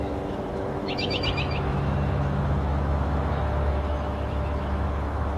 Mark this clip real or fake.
fake